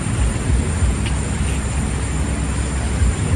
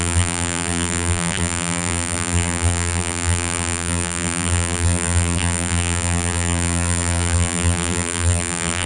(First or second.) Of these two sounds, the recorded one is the first